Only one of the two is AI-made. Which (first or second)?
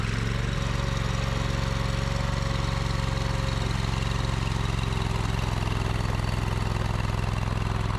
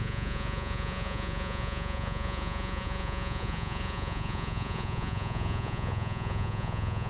second